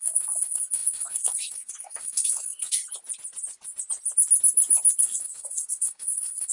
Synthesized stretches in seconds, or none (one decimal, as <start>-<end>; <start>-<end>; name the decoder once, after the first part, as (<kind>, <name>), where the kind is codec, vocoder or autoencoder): 0.0-2.8 (codec, SNAC); 5.0-6.5